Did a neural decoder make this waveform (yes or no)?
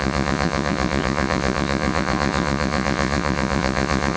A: yes